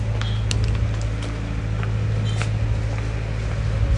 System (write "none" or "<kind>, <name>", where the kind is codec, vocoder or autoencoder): none